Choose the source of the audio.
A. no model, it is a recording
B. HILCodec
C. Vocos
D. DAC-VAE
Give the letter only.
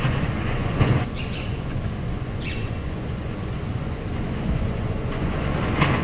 C